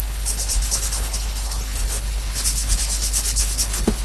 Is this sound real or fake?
fake